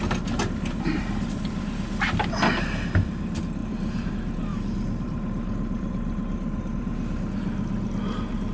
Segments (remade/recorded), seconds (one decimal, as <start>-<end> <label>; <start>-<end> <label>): 0.0-0.4 recorded; 0.4-1.6 remade; 1.6-3.6 recorded; 3.6-4.1 remade; 4.1-4.5 recorded; 4.5-6.8 remade; 6.8-8.5 recorded